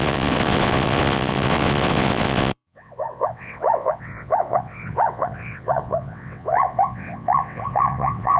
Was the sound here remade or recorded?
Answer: remade